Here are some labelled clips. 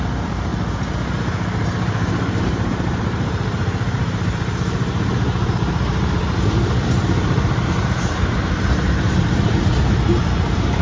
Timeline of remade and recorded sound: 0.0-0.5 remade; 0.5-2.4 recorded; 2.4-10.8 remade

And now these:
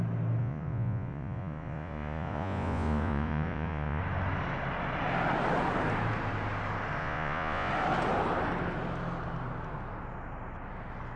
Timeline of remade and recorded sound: 0.0-0.4 recorded; 0.4-4.0 remade; 4.0-7.0 recorded; 7.0-7.7 remade; 7.7-11.2 recorded